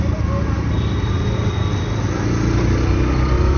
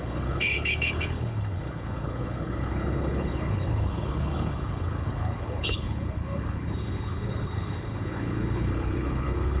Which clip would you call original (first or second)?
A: first